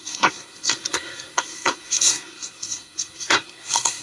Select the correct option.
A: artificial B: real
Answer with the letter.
A